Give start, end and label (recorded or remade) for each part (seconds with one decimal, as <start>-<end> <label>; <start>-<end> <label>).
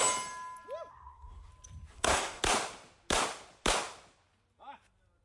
0.0-0.9 recorded; 0.9-1.5 remade; 1.5-1.9 recorded; 1.9-2.4 remade; 2.4-5.2 recorded